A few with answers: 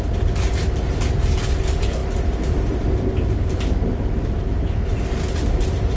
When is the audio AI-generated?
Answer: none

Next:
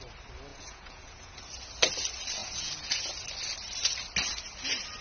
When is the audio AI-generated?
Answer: 0.5-1.4 (vocoder, Vocos); 2.4-3.0

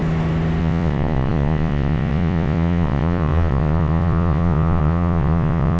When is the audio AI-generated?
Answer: 0.6-5.8 (vocoder, Vocos)

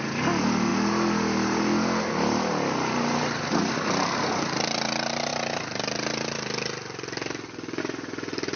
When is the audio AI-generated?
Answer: none